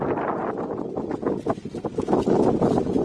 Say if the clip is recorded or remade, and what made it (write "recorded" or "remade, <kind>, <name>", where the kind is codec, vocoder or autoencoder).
recorded